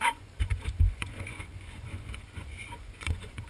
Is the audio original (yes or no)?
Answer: no